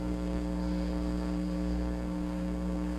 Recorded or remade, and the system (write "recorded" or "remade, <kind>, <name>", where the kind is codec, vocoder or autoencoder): remade, codec, SNAC